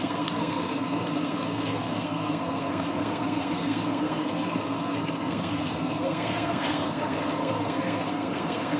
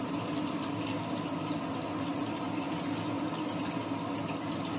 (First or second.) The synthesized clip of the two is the first